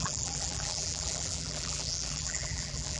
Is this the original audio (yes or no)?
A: no